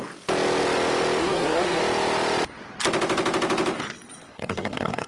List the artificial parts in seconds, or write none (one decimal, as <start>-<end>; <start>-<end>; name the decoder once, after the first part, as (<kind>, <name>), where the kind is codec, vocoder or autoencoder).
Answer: 1.2-1.8 (codec, SNAC); 4.3-5.1